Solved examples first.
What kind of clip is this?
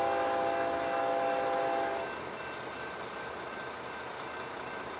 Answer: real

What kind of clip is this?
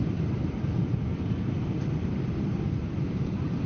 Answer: fake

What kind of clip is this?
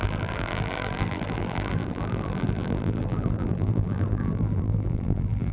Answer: fake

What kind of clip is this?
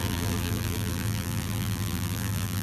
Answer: fake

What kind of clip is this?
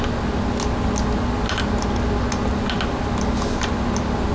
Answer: real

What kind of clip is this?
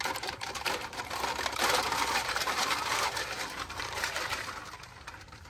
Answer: fake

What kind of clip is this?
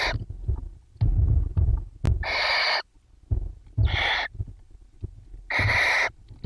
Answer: real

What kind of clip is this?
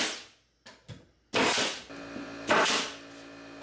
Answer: real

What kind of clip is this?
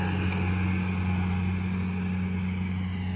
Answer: real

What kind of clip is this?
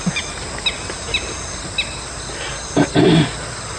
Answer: real